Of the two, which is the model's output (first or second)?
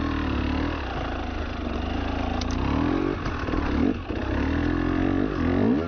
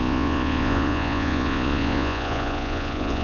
second